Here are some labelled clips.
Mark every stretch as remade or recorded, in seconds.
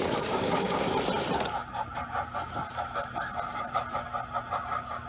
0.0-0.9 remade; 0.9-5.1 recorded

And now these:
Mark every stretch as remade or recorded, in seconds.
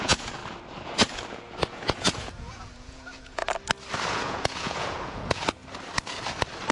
0.0-0.4 remade; 0.4-1.3 recorded; 1.3-3.4 remade; 3.4-4.1 recorded; 4.1-5.6 remade; 5.6-6.7 recorded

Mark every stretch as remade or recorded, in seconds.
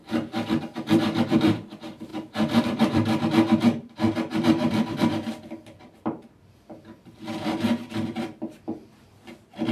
0.0-0.6 recorded; 0.6-9.7 remade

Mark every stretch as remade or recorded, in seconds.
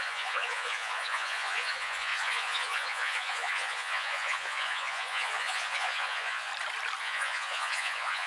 0.0-6.5 remade; 6.5-7.0 recorded; 7.0-8.3 remade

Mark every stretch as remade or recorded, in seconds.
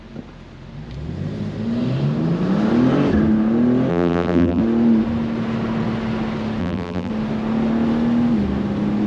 0.0-3.9 recorded; 3.9-4.6 remade; 4.6-6.6 recorded; 6.6-7.1 remade; 7.1-9.1 recorded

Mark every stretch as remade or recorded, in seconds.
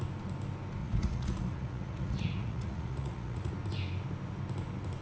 0.0-0.8 recorded; 0.8-3.5 remade; 3.5-5.0 recorded